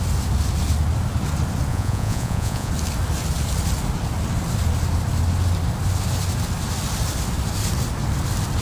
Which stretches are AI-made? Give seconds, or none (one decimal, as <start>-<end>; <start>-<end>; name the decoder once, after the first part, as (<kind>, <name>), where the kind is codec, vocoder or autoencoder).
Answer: 1.7-2.7 (vocoder, Vocos)